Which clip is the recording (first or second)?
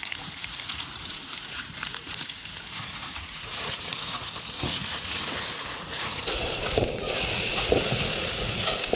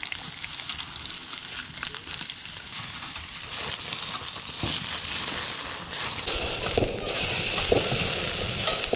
second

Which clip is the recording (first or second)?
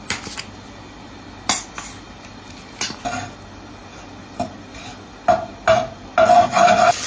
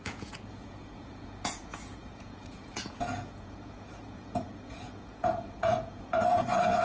first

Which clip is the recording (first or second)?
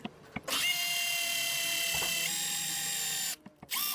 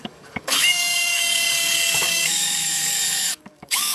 first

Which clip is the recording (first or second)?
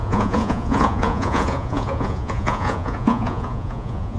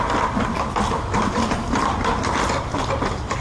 second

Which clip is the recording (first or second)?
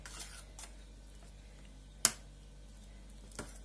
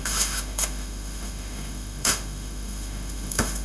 first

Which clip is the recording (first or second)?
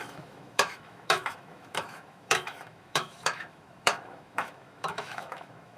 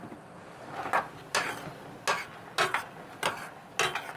second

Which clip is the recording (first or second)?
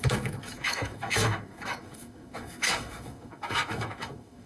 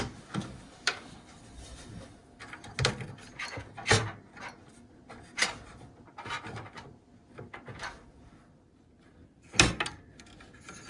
second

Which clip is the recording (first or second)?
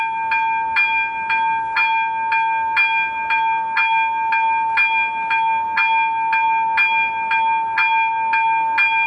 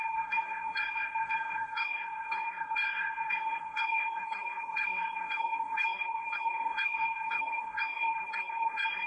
first